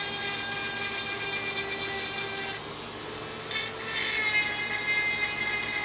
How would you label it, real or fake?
real